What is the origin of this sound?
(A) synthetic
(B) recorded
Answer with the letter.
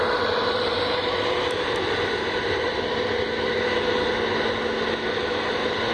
B